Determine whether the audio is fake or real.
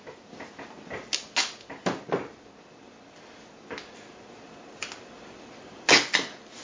real